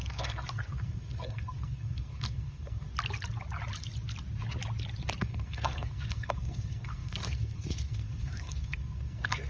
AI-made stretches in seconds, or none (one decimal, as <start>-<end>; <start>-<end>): 0.0-2.9; 5.2-9.5